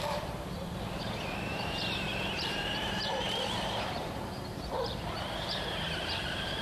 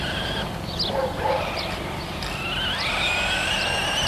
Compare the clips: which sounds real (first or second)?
second